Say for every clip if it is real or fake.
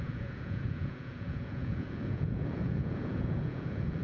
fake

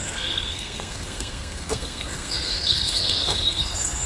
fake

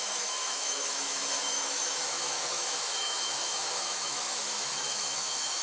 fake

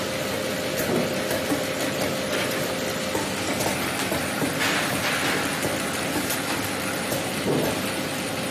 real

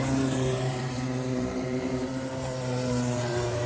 fake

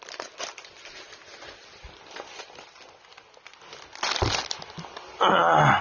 real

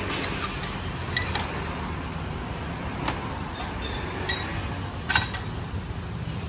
real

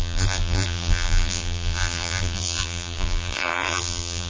fake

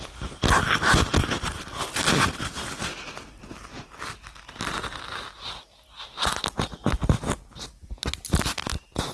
real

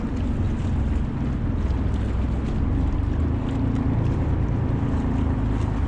real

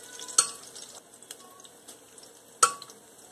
real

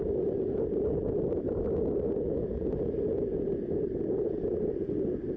real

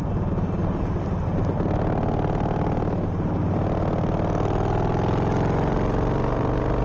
real